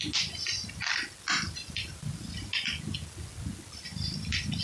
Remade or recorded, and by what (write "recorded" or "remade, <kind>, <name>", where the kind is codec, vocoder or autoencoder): recorded